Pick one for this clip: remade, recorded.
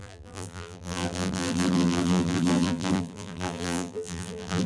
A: remade